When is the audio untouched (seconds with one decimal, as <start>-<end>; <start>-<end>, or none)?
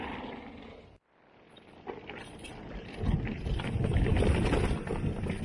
0.0-5.4